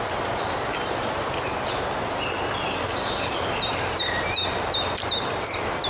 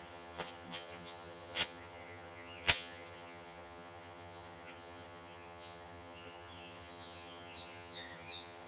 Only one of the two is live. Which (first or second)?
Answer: first